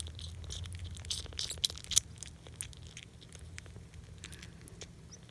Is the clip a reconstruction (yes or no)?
no